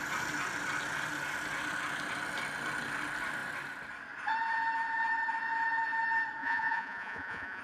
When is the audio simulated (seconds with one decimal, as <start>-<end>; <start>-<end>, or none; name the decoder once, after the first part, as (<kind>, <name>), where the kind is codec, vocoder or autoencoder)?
6.4-7.6 (vocoder, Vocos)